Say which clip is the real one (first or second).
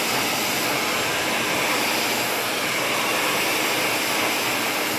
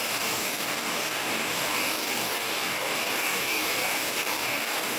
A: first